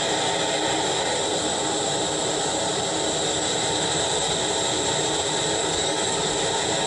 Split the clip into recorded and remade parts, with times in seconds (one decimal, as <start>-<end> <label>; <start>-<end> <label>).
0.0-5.6 recorded; 5.6-6.3 remade; 6.3-6.9 recorded